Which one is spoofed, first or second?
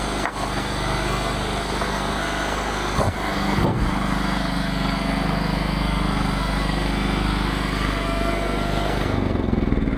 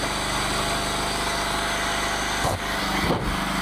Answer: first